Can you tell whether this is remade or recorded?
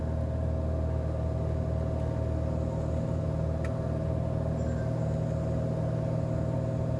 recorded